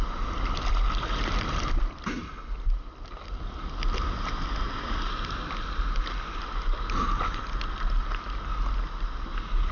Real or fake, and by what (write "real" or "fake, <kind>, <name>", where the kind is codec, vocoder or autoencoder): real